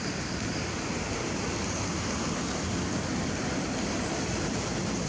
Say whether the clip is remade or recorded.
recorded